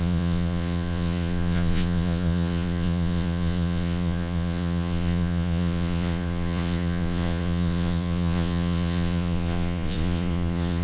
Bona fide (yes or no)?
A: no